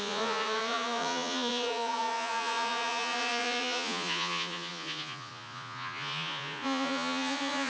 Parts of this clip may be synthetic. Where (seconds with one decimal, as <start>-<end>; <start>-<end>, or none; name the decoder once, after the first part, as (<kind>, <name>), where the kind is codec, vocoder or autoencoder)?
0.0-7.7 (vocoder, Vocos)